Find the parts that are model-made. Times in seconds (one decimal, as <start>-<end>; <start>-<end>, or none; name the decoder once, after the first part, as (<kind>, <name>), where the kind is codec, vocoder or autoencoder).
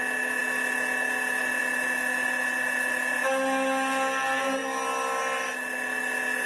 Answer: none